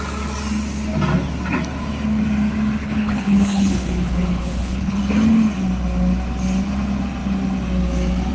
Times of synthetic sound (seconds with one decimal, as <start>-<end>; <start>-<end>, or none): 2.8-5.0